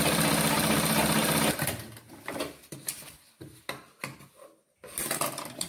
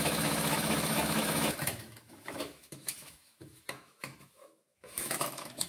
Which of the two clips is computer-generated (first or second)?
second